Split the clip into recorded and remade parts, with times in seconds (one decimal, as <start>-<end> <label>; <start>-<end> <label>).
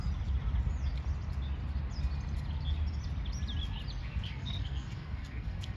0.0-4.0 recorded; 4.0-5.8 remade